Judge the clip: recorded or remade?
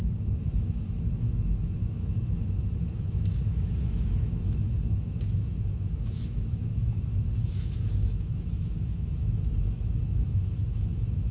remade